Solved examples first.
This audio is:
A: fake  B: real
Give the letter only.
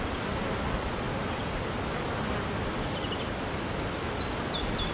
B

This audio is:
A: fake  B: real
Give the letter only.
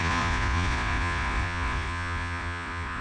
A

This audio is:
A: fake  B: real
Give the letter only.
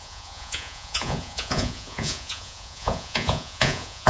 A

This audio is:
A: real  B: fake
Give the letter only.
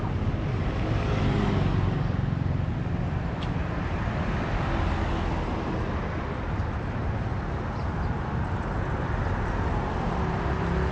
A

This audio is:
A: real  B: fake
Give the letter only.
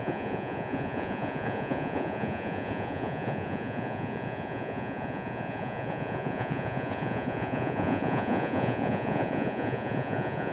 B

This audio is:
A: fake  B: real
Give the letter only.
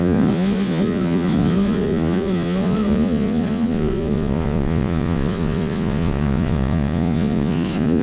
A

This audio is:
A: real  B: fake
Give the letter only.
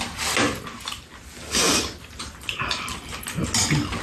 A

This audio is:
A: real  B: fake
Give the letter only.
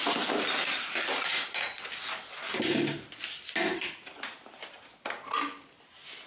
A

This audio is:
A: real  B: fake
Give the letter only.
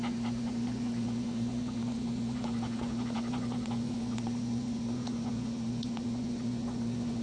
B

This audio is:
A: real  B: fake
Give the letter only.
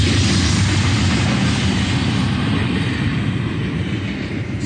A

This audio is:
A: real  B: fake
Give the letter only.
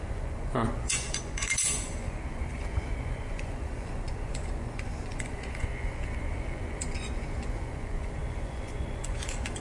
B